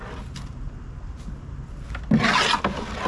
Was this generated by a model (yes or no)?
no